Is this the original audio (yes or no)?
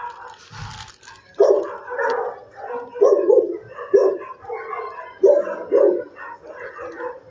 yes